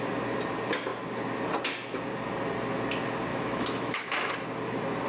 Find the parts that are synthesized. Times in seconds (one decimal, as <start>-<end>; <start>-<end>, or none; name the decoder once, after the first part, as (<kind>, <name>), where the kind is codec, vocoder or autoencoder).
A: 3.3-4.3 (autoencoder, DAC-VAE)